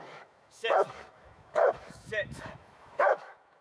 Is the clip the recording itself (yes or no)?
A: no